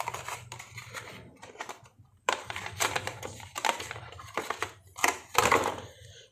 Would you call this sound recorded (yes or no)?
no